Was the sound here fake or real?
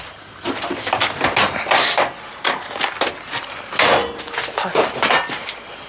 real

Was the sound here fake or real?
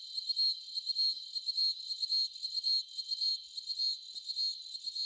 real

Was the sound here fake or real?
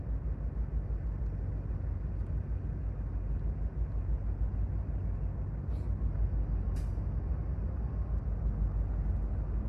real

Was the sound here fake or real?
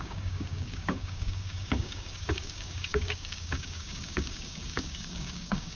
fake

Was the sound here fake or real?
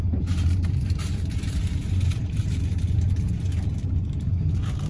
fake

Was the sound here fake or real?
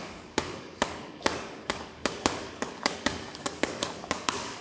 fake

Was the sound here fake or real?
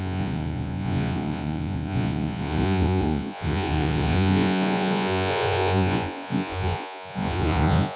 fake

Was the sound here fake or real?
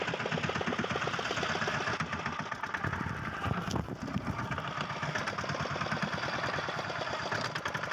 real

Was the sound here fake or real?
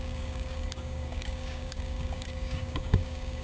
fake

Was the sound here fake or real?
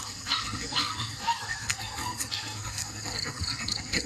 fake